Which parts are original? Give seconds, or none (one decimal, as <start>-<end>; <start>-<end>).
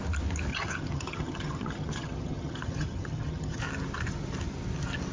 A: 0.0-0.5; 3.6-5.1